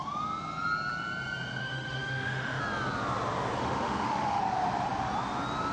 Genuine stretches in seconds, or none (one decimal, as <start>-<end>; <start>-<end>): 0.0-1.6; 2.6-3.6; 4.4-5.7